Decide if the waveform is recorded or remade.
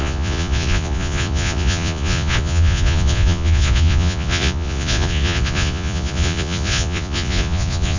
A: remade